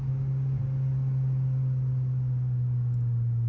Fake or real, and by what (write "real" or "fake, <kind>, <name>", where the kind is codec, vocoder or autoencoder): real